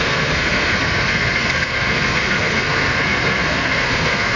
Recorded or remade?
remade